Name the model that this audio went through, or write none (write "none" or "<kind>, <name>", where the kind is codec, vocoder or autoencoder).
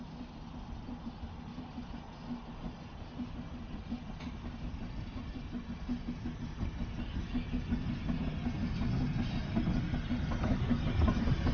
none